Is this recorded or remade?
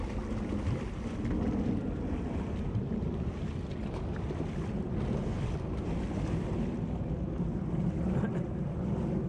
recorded